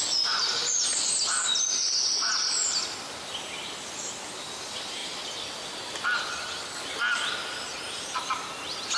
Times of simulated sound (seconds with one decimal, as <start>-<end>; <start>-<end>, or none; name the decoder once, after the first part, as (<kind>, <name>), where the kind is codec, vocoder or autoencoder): none

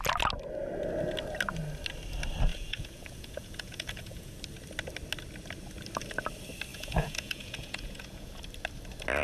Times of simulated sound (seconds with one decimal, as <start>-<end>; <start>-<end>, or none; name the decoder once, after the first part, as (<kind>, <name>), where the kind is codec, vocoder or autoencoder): 2.5-4.4 (vocoder, Vocos); 6.7-8.4

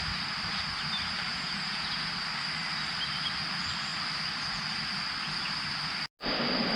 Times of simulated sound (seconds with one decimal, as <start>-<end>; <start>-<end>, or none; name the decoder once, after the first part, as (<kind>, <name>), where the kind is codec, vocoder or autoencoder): 1.3-2.1 (vocoder, Vocos)

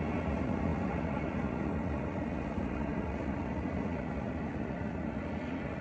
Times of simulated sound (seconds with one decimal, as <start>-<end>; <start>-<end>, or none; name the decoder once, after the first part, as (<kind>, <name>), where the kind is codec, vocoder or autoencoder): 0.0-5.8 (vocoder, Vocos)